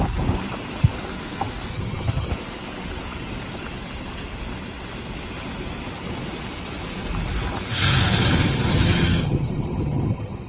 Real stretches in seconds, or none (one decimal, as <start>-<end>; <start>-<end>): 0.0-1.7; 2.3-8.7